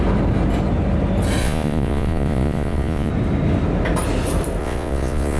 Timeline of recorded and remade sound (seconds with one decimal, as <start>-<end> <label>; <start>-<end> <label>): 0.0-1.4 recorded; 1.4-3.1 remade; 3.1-4.6 recorded; 4.6-5.4 remade